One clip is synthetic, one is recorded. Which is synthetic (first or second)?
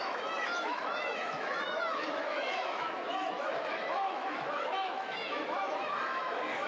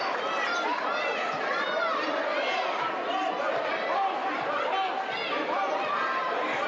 first